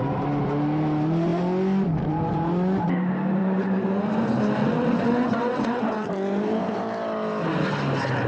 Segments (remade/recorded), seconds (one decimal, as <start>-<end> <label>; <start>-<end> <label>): 0.0-3.4 recorded; 3.4-4.0 remade; 4.0-4.6 recorded; 4.6-6.1 remade; 6.1-8.3 recorded